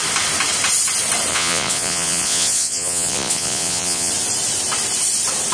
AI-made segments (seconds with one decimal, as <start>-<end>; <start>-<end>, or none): 1.3-4.1